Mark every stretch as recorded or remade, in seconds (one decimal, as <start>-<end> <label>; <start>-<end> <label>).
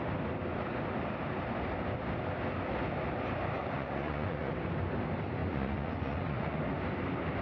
0.0-3.6 recorded; 3.6-4.5 remade; 4.5-5.4 recorded; 5.4-6.6 remade; 6.6-7.4 recorded